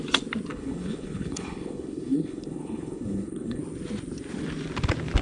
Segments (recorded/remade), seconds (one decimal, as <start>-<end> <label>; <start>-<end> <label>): 0.0-0.5 recorded; 0.5-3.6 remade; 3.6-5.2 recorded